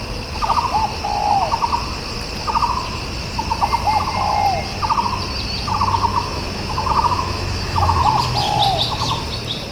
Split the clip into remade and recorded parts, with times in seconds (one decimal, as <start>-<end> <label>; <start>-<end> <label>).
0.0-6.1 recorded; 6.1-8.0 remade; 8.0-9.7 recorded